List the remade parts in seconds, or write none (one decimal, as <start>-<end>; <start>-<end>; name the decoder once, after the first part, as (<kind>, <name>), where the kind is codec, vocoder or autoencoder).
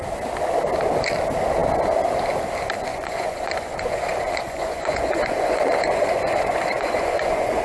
2.9-7.6 (vocoder, Vocos)